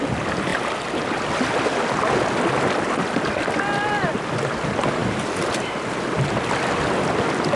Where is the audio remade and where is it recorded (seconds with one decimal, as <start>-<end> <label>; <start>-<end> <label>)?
0.0-7.6 recorded